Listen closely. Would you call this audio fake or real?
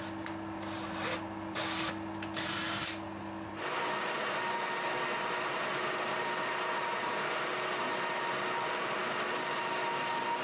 real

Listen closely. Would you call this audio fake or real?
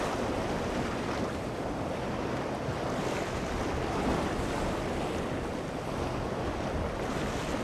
real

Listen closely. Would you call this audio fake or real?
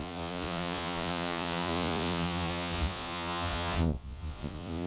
fake